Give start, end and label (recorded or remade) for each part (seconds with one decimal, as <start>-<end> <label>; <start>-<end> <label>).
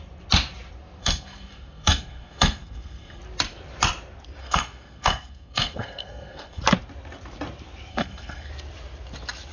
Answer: 0.0-1.0 recorded; 1.0-3.2 remade; 3.2-4.4 recorded; 4.4-6.6 remade; 6.6-7.9 recorded; 7.9-8.5 remade; 8.5-9.5 recorded